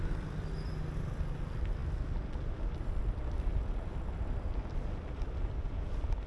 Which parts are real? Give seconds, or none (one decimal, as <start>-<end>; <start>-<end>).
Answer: 0.0-6.3